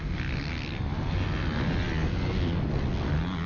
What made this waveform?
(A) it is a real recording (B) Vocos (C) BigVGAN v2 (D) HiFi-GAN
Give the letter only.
A